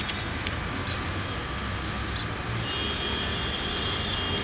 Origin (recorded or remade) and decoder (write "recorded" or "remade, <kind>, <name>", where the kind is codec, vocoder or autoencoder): recorded